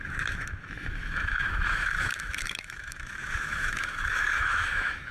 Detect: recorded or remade remade